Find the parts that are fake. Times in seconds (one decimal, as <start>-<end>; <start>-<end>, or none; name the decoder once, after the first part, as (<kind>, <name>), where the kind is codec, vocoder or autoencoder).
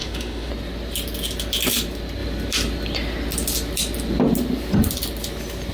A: 0.0-0.5 (autoencoder, DAC-VAE)